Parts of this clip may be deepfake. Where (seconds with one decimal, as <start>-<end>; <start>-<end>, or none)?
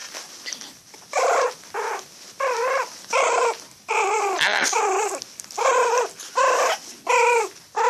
none